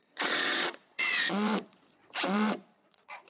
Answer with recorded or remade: remade